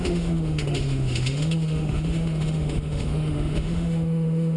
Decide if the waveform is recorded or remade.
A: remade